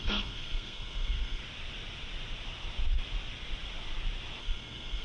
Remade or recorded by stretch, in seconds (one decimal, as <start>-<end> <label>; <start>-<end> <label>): 0.0-1.4 remade; 1.4-4.4 recorded; 4.4-5.0 remade